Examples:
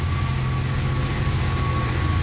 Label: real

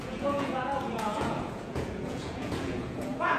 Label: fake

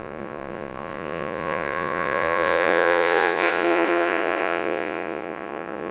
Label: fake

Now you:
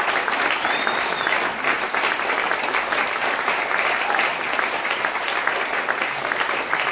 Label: real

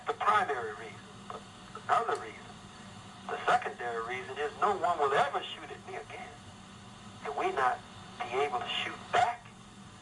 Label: real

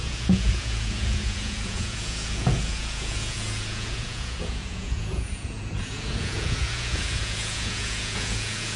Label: fake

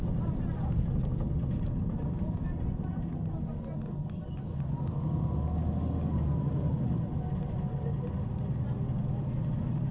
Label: real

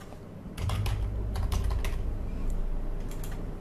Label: real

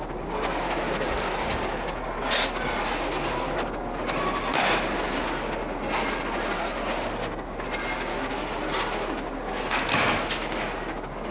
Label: real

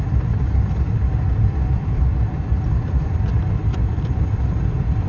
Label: real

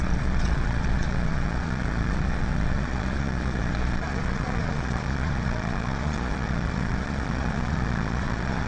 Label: fake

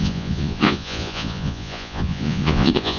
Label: fake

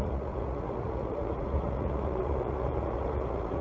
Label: fake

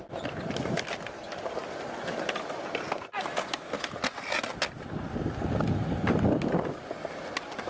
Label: real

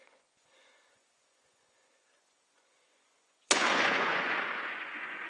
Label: fake